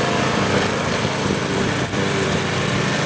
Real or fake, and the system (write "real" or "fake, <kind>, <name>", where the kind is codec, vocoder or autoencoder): fake, vocoder, BigVGAN v2